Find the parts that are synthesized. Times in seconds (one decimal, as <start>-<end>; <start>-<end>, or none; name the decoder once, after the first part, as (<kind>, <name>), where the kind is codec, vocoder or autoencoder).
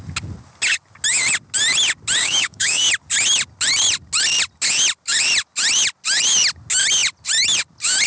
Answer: 2.2-2.8 (codec, DAC)